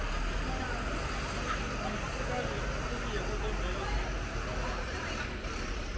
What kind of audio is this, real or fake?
real